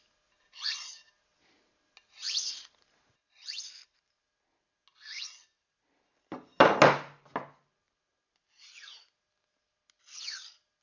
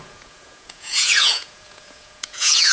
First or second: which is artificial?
second